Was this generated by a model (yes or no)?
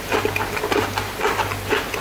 no